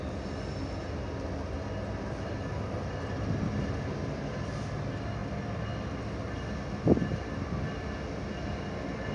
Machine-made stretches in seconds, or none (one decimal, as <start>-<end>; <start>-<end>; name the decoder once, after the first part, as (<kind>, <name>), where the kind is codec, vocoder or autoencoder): none